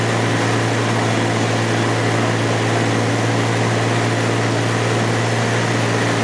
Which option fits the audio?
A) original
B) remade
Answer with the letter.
A